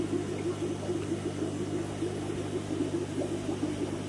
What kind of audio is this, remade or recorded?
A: recorded